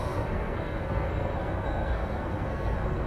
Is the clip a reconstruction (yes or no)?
yes